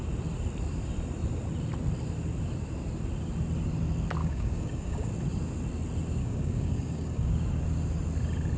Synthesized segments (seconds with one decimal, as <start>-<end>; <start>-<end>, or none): 4.2-5.1; 6.2-7.3